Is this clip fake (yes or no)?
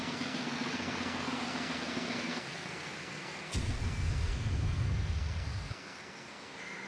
yes